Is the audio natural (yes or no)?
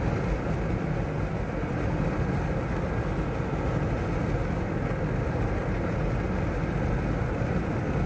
yes